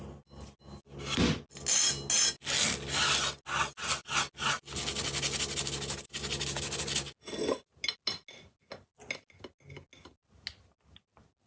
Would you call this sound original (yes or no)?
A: yes